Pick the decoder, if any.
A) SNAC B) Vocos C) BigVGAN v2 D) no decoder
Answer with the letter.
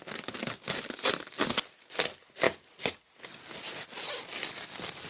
D